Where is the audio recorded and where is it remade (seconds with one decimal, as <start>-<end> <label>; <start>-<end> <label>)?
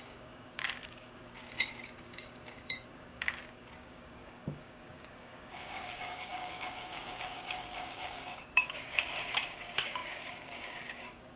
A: 0.0-11.4 remade